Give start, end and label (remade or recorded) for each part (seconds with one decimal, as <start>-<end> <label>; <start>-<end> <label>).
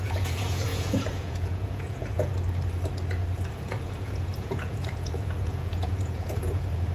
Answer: 0.0-2.3 remade; 2.3-3.5 recorded; 3.5-6.9 remade